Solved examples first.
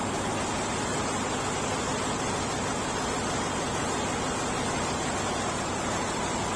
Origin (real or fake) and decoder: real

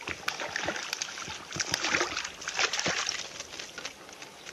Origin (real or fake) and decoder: real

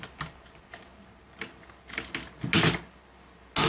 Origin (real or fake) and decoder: real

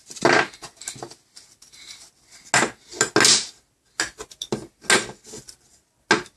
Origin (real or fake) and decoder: real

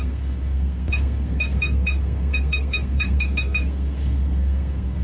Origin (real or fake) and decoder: fake, codec, SNAC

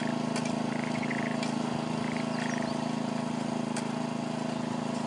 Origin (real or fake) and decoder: real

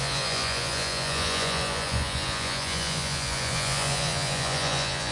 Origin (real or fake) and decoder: fake, vocoder, Vocos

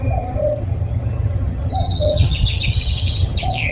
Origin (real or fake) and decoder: fake, vocoder, HiFi-GAN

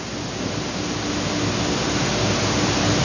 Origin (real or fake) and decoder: real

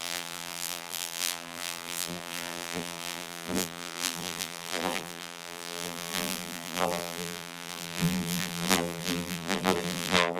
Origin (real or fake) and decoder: fake, vocoder, BigVGAN v2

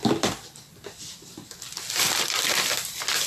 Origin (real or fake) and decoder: fake, vocoder, BigVGAN v2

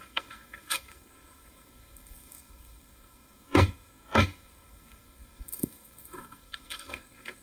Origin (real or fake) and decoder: fake, codec, SNAC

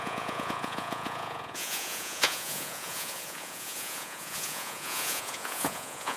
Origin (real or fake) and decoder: fake, vocoder, Vocos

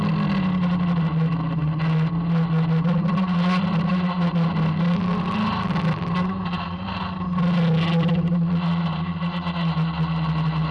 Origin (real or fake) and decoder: real